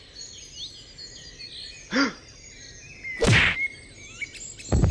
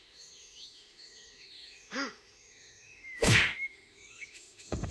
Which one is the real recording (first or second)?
first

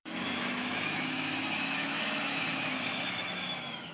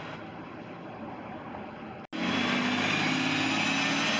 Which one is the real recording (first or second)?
second